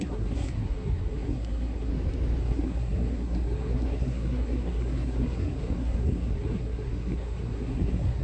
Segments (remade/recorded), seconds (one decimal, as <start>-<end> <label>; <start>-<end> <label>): 0.0-1.9 remade; 1.9-2.4 recorded; 2.4-8.2 remade